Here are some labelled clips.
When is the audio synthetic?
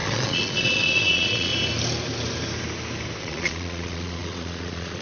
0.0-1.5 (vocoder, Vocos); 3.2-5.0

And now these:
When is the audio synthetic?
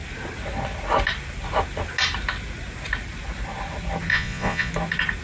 4.1-4.7 (vocoder, Vocos)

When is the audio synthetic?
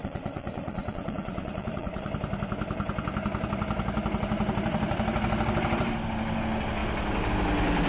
0.0-2.1 (vocoder, Vocos)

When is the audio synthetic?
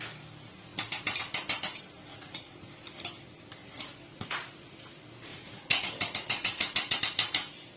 2.1-2.6 (vocoder, Vocos); 4.1-4.8; 5.3-7.0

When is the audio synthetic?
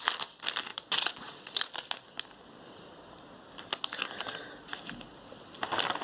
0.7-1.7 (vocoder, Vocos)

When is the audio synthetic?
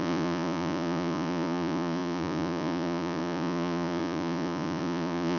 0.0-5.4 (vocoder, Vocos)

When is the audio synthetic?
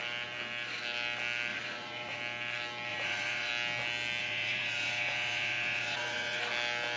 1.5-2.2 (vocoder, Vocos); 2.9-3.5; 4.2-6.4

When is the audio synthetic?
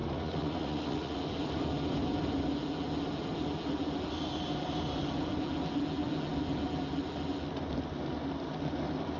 0.0-1.2 (vocoder, Vocos)